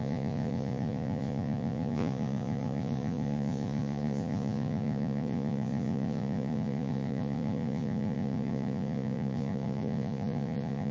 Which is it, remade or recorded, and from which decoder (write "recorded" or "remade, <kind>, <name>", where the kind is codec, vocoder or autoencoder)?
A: remade, vocoder, Vocos